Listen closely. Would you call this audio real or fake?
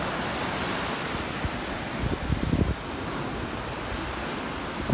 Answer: real